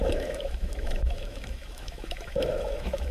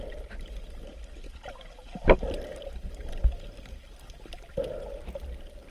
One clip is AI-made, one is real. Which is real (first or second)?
second